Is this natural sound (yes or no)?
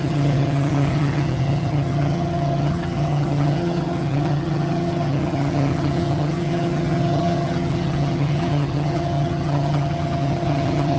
no